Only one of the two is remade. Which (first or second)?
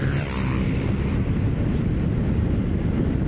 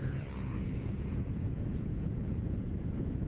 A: second